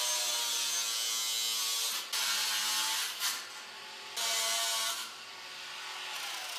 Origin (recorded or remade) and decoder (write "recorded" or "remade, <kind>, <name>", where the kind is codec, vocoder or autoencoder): recorded